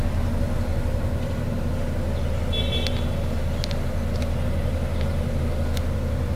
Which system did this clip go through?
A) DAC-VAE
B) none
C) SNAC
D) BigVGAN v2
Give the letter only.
B